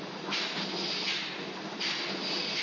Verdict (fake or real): real